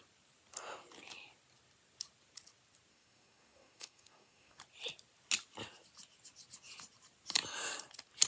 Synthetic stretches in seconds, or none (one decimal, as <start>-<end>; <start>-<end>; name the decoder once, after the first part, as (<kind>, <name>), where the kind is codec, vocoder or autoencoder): 2.9-4.6 (codec, SNAC)